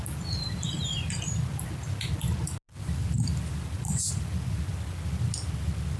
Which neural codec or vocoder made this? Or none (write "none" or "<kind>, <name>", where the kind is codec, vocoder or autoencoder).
none